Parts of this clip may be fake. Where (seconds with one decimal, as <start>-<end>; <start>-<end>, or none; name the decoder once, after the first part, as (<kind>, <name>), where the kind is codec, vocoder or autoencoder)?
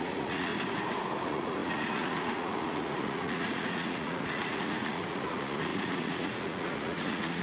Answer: 0.0-0.5 (vocoder, Vocos); 1.2-7.4